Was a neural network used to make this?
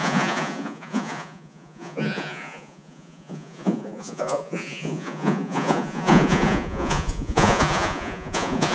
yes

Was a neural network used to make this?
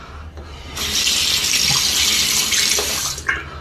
no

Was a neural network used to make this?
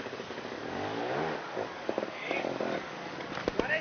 yes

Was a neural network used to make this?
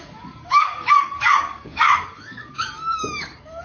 yes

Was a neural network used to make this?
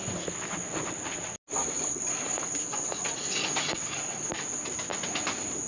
no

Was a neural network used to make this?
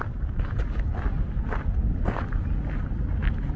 no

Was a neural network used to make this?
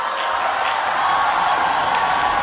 no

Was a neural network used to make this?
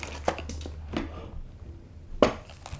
no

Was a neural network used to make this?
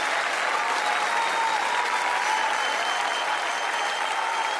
no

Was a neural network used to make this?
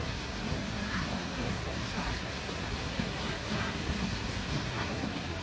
yes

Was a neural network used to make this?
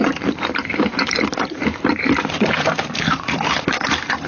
yes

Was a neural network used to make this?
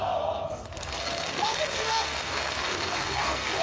yes